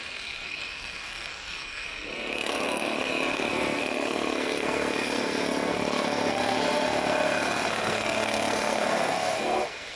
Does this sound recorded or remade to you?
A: remade